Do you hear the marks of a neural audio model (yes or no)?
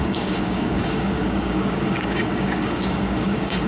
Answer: yes